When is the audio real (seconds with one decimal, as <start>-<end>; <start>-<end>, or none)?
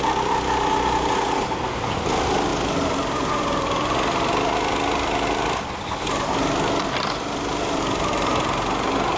0.0-9.2